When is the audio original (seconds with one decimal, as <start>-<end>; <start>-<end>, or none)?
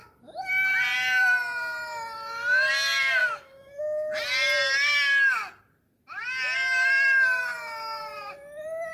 0.0-3.2; 3.8-8.9